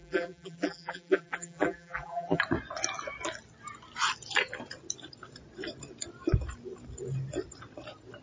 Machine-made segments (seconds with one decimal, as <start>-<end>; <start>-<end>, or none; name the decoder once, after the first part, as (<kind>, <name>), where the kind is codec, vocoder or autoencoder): 0.0-2.4 (vocoder, BigVGAN v2)